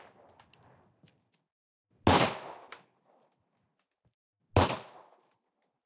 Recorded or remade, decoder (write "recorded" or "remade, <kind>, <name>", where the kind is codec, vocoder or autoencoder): recorded